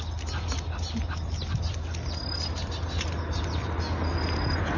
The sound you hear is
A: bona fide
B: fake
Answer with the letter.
A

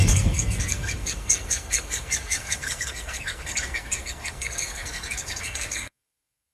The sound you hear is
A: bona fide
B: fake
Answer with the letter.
B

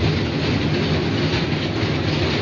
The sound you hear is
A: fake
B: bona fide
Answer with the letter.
B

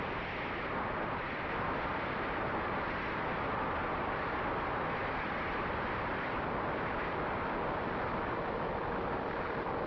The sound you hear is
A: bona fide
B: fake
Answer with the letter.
A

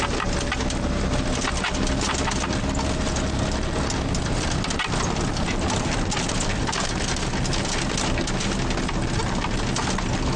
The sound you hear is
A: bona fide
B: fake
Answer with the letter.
A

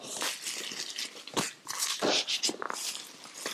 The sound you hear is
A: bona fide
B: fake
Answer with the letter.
A